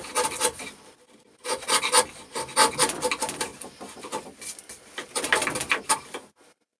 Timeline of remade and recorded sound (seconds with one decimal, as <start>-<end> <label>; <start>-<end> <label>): 0.0-6.8 recorded